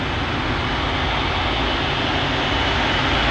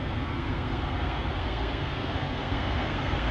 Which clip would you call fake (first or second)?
second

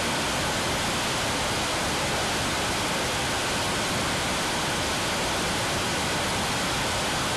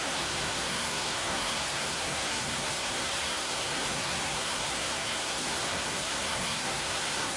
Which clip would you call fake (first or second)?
second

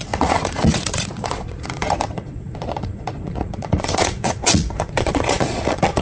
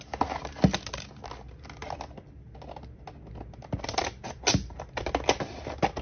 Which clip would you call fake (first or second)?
first